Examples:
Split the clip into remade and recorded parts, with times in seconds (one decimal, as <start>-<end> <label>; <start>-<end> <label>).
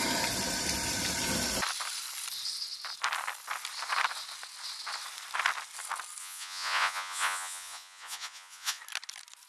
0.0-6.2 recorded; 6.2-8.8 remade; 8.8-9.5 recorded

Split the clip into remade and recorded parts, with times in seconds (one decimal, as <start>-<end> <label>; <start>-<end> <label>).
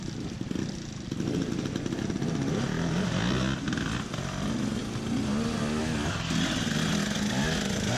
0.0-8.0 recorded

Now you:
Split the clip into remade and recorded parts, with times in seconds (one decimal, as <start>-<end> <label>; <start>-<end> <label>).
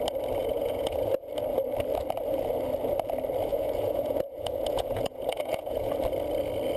0.0-0.4 recorded; 0.4-1.3 remade; 1.3-3.5 recorded; 3.5-5.9 remade; 5.9-6.8 recorded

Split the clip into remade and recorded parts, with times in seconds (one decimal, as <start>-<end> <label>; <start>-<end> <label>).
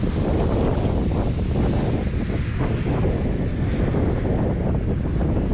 0.0-5.5 recorded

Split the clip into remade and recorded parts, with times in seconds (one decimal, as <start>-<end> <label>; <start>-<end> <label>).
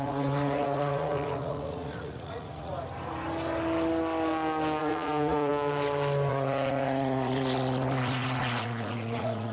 0.0-2.7 remade; 2.7-4.8 recorded; 4.8-5.5 remade; 5.5-6.3 recorded; 6.3-9.5 remade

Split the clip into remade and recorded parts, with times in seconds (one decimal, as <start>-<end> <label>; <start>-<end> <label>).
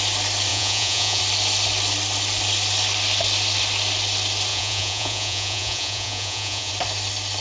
0.0-0.5 recorded; 0.5-1.2 remade; 1.2-4.5 recorded; 4.5-6.7 remade; 6.7-7.4 recorded